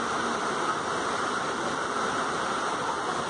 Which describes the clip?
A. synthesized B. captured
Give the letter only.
B